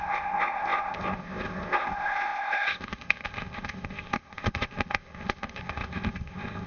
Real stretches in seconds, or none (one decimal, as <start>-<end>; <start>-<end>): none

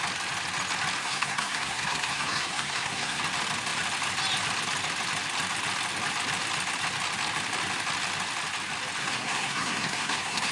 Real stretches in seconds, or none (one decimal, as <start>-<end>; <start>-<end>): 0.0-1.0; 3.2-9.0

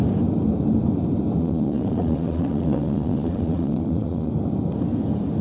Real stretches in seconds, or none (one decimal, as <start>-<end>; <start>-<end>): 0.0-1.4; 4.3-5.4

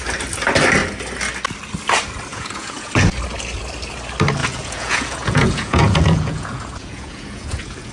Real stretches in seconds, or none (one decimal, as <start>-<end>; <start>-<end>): 0.0-2.3; 2.9-4.4

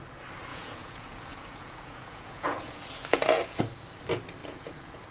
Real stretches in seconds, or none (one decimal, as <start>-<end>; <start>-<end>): 0.0-0.5; 3.6-4.4

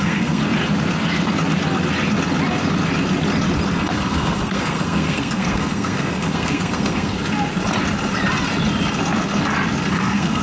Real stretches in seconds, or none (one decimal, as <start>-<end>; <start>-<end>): 0.4-3.8; 7.2-9.9

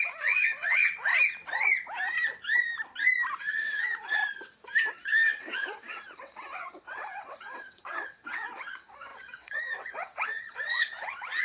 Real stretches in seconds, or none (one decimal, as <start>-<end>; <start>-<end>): 1.1-3.4; 4.2-4.9

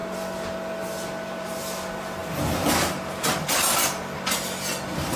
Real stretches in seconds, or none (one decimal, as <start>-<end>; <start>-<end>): 0.0-5.2